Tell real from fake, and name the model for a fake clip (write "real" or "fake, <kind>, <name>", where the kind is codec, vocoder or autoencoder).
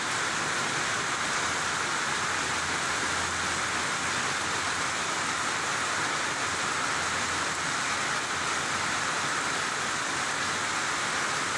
real